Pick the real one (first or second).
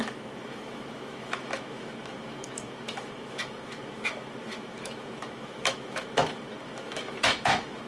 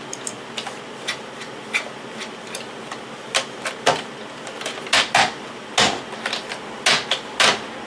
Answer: second